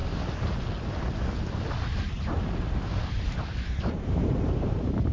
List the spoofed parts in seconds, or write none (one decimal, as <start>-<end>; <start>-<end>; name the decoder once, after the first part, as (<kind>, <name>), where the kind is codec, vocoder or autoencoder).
3.1-5.1 (vocoder, BigVGAN v2)